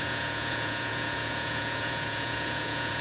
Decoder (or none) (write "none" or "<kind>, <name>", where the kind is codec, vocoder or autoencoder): vocoder, Vocos